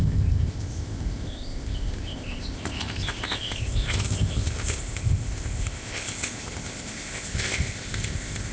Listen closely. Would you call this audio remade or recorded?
remade